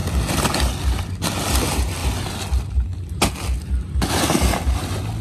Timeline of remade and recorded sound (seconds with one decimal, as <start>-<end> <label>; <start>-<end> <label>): 0.0-5.2 recorded